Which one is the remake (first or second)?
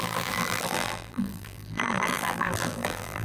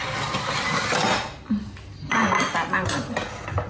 first